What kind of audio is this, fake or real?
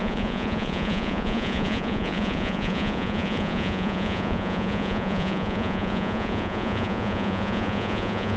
fake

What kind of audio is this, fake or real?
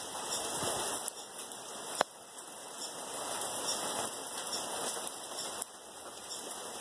real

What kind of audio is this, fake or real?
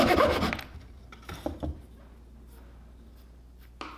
real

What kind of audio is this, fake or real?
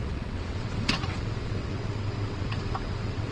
fake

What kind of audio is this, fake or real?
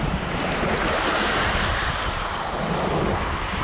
real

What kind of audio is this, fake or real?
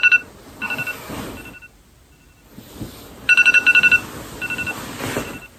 real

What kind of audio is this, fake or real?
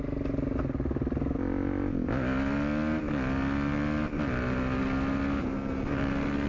real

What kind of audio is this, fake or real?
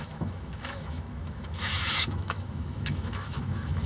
fake